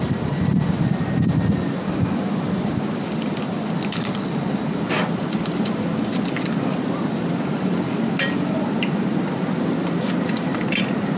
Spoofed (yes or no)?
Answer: yes